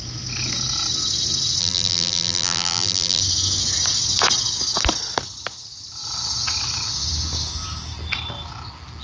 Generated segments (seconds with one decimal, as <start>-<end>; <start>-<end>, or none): 1.6-3.2